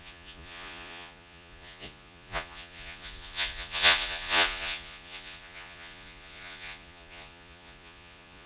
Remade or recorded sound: remade